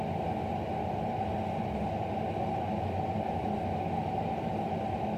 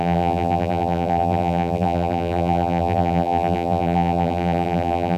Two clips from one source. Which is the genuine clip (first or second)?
first